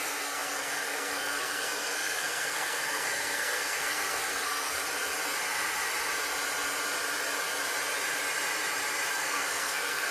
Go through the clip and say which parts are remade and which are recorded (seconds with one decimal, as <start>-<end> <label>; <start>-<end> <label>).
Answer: 0.0-4.8 remade; 4.8-9.1 recorded; 9.1-10.1 remade